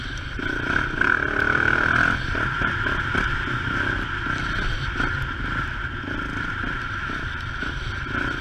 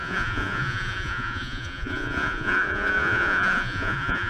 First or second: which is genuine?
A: first